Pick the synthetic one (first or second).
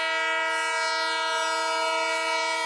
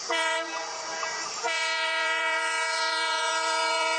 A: second